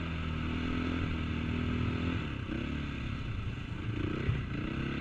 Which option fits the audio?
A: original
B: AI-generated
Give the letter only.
A